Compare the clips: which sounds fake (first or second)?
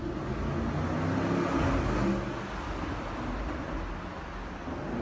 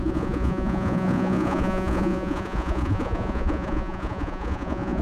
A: second